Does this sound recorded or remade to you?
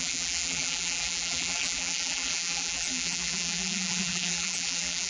remade